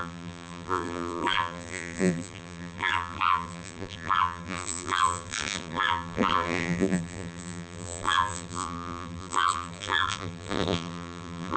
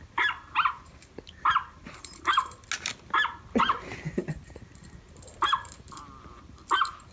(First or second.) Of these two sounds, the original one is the second